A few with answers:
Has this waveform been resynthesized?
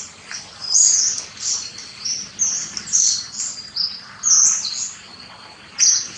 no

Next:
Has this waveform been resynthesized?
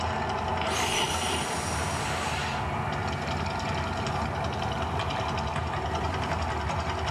no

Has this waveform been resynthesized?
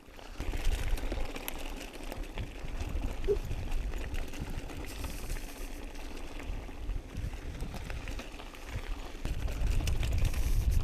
no